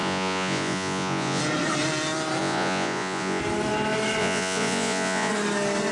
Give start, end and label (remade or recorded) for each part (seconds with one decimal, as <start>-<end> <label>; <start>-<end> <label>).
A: 0.0-1.4 remade; 1.4-2.4 recorded; 2.4-3.4 remade; 3.4-4.2 recorded; 4.2-5.3 remade; 5.3-5.9 recorded